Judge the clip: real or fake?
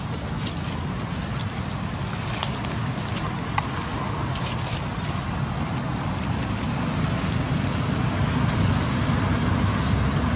real